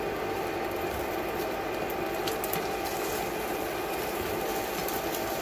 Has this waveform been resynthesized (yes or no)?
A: no